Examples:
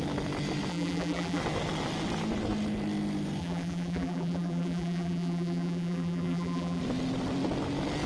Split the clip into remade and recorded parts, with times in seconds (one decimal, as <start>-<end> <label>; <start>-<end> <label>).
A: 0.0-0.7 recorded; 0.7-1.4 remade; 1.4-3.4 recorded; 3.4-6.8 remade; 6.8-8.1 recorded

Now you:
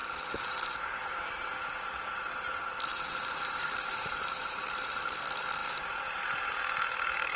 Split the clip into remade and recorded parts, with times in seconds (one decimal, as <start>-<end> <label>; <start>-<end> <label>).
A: 0.0-1.2 remade; 1.2-2.9 recorded; 2.9-5.0 remade; 5.0-5.6 recorded; 5.6-6.5 remade; 6.5-7.4 recorded

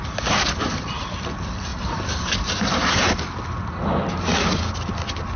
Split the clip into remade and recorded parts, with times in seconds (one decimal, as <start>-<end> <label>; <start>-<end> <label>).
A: 0.0-1.7 recorded; 1.7-3.1 remade; 3.1-5.4 recorded

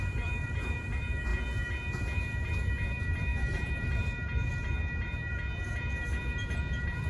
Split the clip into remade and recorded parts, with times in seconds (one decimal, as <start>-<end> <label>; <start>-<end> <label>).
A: 0.0-7.1 remade

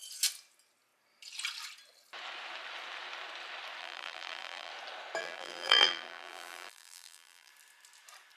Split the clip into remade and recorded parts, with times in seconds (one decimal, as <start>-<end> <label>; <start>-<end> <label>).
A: 0.0-3.8 recorded; 3.8-4.7 remade; 4.7-5.2 recorded; 5.2-7.5 remade; 7.5-8.4 recorded